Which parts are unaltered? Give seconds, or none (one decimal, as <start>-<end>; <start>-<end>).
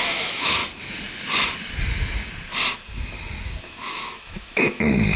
0.6-3.6